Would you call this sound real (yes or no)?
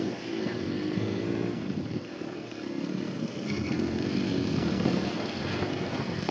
no